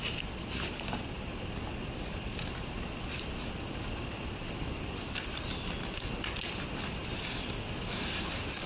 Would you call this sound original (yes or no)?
yes